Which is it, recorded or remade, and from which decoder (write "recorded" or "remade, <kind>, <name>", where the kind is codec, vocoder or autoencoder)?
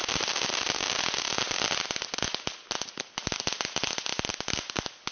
recorded